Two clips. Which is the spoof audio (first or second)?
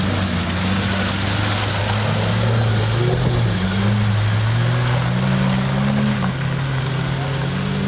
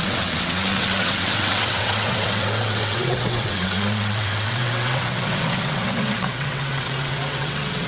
second